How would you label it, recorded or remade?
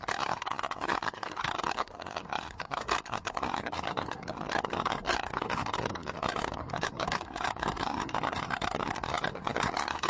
remade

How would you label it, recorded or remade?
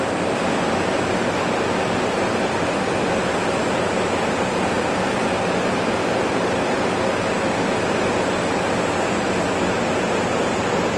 recorded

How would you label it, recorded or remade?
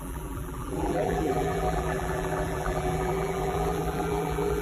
remade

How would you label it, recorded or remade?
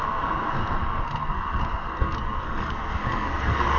remade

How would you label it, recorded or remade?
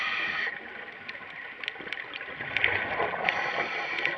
recorded